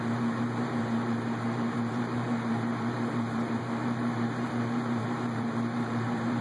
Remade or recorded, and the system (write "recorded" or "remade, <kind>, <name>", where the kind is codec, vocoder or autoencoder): remade, vocoder, BigVGAN v2